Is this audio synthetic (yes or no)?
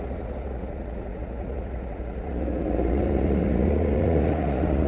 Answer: yes